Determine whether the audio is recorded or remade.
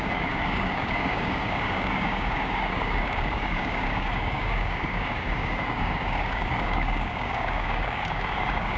remade